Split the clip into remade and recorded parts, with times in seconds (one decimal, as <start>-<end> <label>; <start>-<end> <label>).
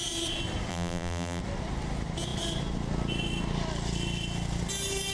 0.0-0.7 recorded; 0.7-1.4 remade; 1.4-5.1 recorded